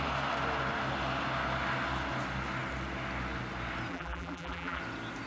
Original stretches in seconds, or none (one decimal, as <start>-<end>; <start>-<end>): 0.0-3.9; 4.8-5.3